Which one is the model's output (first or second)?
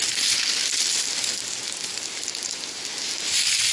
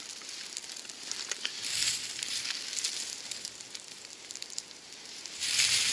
second